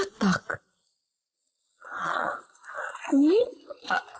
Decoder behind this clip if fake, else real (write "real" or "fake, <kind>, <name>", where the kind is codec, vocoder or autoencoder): fake, vocoder, Vocos